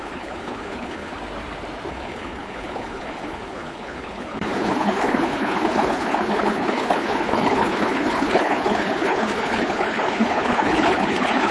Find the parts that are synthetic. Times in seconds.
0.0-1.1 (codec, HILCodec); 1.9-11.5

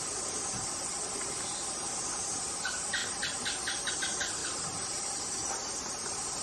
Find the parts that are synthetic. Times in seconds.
4.4-5.2 (vocoder, BigVGAN v2)